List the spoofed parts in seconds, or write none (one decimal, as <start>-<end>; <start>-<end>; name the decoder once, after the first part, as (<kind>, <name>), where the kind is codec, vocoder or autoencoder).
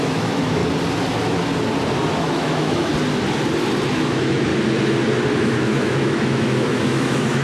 0.0-0.6 (autoencoder, DAC-VAE); 2.2-2.9; 3.9-4.5; 5.4-7.4